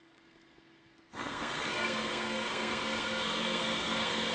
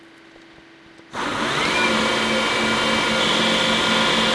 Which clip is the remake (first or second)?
first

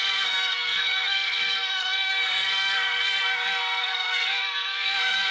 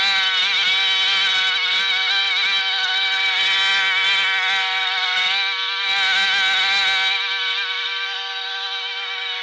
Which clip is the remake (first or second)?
first